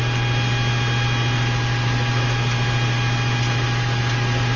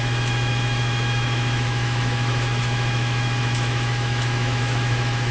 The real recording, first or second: first